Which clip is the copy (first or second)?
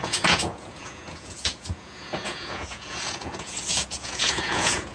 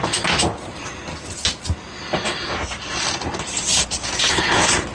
first